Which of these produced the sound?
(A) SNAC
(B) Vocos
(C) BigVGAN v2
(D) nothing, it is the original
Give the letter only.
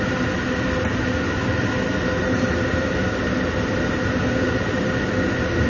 D